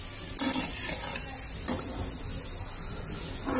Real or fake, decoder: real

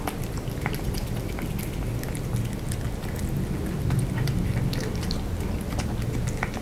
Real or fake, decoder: real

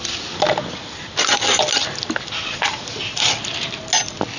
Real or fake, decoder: real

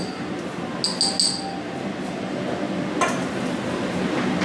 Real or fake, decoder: real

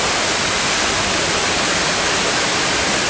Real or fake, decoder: real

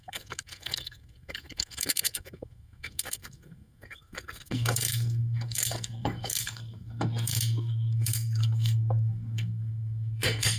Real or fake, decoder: fake, codec, SNAC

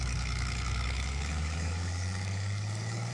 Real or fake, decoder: fake, codec, DAC